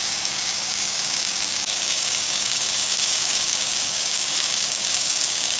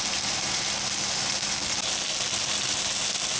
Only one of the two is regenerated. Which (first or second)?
first